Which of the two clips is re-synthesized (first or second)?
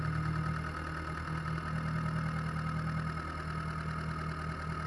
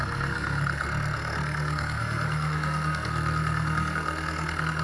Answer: second